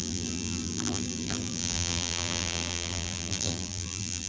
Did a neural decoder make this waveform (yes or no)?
yes